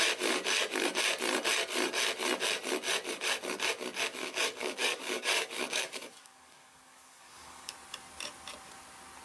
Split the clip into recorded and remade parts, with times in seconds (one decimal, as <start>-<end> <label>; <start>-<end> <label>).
0.0-4.2 recorded; 4.2-7.7 remade; 7.7-9.2 recorded